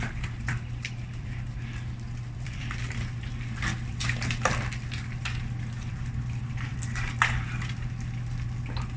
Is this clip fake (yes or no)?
yes